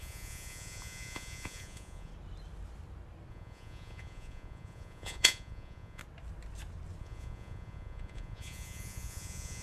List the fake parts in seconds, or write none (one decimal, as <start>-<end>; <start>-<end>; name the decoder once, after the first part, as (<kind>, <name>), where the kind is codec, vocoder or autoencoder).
0.0-2.1 (vocoder, Vocos); 3.3-6.0; 7.0-9.6